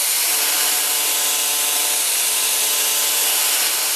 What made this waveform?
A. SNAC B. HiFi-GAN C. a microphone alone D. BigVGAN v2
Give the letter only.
C